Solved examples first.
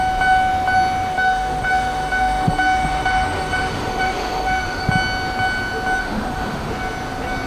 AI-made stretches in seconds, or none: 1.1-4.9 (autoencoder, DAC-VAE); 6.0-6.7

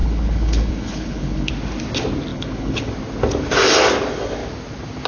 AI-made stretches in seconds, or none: 0.0-1.5 (codec, HILCodec); 2.3-2.9

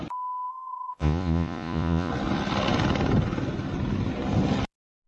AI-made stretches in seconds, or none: 0.5-2.1 (vocoder, Vocos)

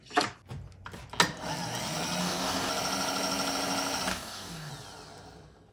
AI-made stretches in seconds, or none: 2.2-2.7 (codec, DAC); 4.1-4.7

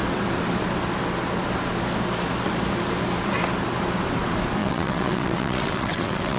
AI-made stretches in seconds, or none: 4.6-6.4 (vocoder, WaveNeXt)

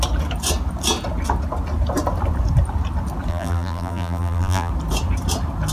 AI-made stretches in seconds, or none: 3.3-4.7 (vocoder, BigVGAN v2)

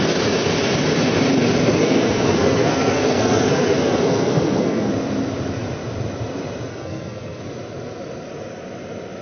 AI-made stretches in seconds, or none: 1.7-4.9 (codec, SNAC); 6.7-7.4

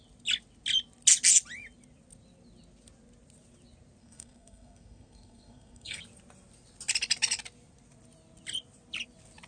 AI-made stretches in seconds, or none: 4.0-6.0 (codec, SNAC)